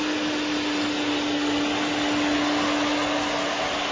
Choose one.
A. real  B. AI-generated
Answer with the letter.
A